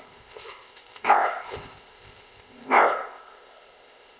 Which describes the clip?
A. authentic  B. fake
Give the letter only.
B